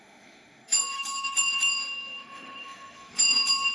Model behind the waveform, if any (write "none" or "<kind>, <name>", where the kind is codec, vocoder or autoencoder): autoencoder, DAC-VAE